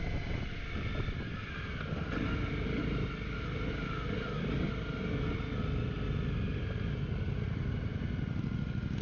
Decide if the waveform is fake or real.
real